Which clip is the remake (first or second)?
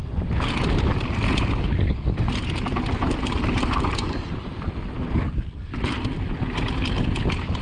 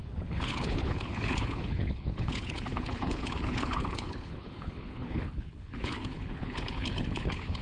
second